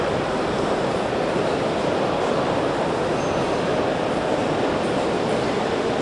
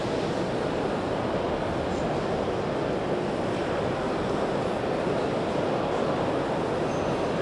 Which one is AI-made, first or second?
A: first